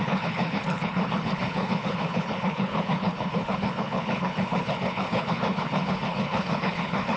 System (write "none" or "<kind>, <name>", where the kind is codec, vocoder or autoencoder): codec, HILCodec